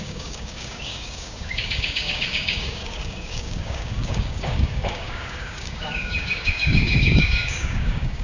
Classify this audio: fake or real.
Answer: fake